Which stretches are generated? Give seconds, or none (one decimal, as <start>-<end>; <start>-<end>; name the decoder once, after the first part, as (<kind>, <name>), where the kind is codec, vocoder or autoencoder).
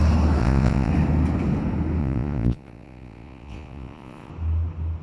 0.4-0.9 (vocoder, Vocos); 2.0-4.3